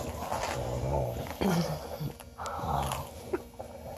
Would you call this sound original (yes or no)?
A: yes